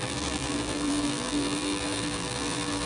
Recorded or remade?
remade